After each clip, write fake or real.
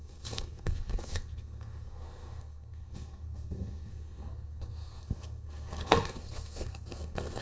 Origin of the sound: fake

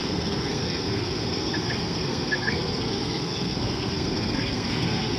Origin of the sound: fake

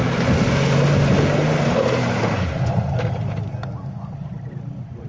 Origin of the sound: real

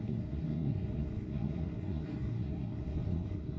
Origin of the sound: fake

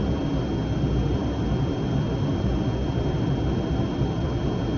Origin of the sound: real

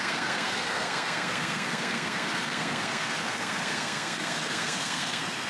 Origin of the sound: fake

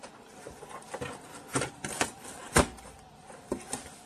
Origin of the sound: real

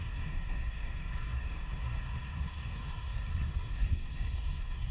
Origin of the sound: fake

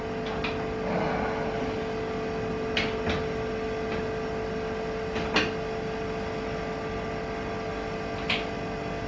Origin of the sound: real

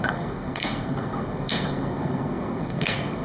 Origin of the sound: fake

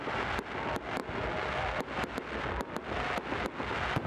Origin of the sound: real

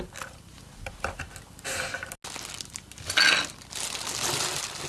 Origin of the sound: real